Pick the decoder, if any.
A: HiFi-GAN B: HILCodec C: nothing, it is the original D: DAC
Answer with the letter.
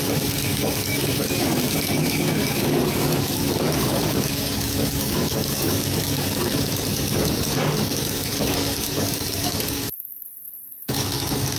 D